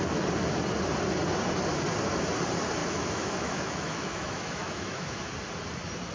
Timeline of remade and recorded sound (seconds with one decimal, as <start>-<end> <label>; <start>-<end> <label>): 0.0-2.8 recorded; 2.8-5.3 remade; 5.3-6.1 recorded